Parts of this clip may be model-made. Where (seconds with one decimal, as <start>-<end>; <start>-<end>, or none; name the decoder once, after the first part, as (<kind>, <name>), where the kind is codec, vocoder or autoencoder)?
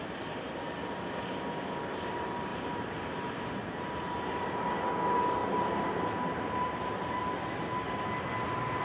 2.5-4.7 (vocoder, BigVGAN v2); 5.4-7.2